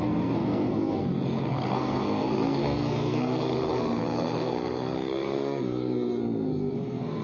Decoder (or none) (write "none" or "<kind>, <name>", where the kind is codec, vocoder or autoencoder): codec, SNAC